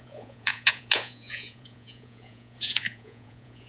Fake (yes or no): yes